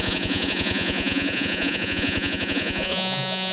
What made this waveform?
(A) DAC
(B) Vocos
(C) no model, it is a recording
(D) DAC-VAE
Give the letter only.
B